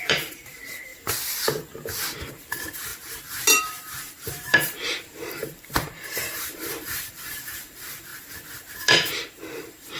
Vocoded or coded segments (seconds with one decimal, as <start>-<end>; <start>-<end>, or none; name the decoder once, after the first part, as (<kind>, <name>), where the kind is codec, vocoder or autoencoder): 0.0-0.9 (vocoder, BigVGAN v2); 2.3-2.9; 3.6-8.1; 9.1-10.0